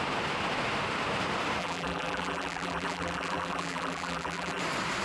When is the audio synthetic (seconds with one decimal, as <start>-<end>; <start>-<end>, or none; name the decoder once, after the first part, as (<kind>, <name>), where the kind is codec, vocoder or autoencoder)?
1.6-4.6 (vocoder, BigVGAN v2)